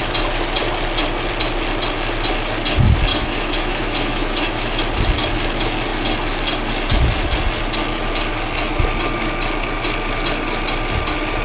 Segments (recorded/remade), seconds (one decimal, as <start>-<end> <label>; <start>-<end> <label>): 0.0-3.1 recorded; 3.1-4.8 remade; 4.8-11.4 recorded